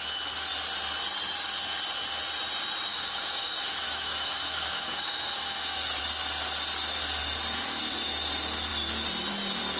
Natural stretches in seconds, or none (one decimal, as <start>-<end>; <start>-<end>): 0.0-2.9; 6.0-9.8